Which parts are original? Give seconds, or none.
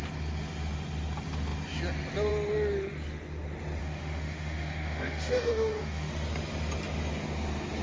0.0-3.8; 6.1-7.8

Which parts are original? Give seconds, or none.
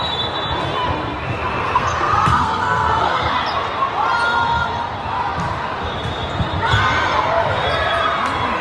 0.0-1.6; 3.3-8.6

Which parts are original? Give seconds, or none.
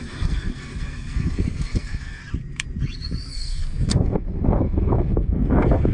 2.2-3.3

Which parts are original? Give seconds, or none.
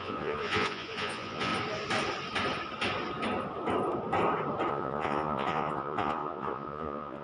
1.5-4.7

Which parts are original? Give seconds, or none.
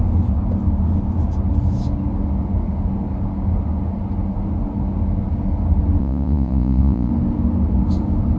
0.0-6.0; 7.1-8.4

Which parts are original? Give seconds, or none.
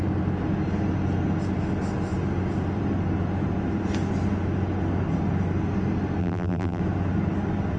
0.0-6.2; 6.8-7.8